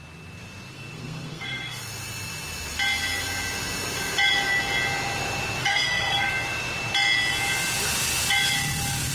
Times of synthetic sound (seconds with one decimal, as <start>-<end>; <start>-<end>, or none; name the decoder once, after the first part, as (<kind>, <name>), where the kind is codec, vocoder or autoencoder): 0.7-1.8 (codec, SNAC); 5.6-6.3